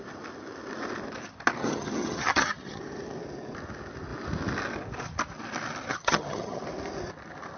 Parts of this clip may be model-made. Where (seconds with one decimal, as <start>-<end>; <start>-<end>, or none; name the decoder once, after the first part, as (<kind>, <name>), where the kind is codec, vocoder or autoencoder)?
1.6-2.8 (vocoder, HiFi-GAN); 5.9-6.6